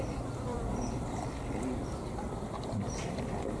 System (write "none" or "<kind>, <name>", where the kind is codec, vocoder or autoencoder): vocoder, BigVGAN v2